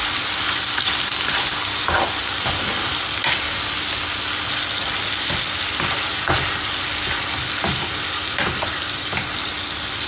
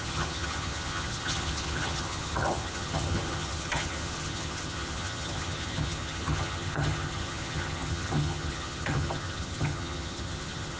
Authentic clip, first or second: first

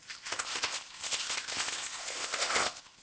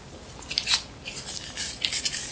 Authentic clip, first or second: second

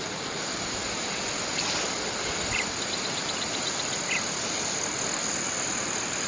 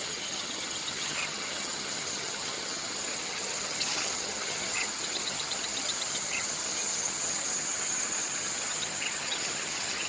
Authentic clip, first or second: first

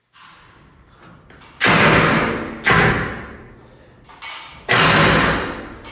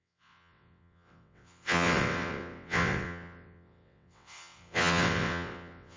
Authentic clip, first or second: first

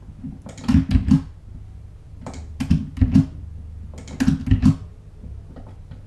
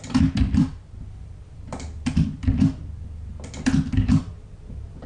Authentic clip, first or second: first